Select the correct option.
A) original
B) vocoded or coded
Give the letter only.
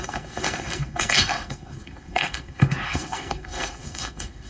B